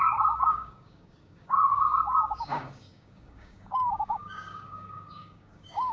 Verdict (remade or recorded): remade